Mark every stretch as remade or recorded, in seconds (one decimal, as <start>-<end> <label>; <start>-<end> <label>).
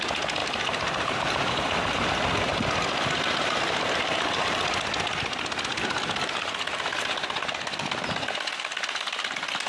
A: 0.0-9.7 recorded